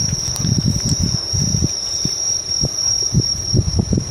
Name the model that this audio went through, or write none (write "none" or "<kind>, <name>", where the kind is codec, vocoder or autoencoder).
vocoder, BigVGAN v2